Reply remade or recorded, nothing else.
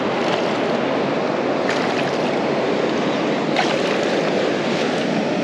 recorded